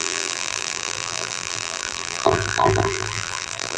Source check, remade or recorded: remade